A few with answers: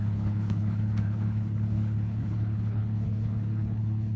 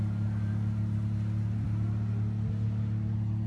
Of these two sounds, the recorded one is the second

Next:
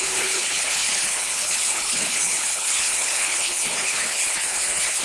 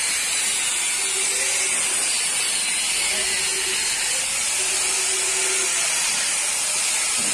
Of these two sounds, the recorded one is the second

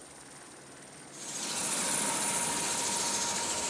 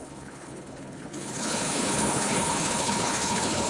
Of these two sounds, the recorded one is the first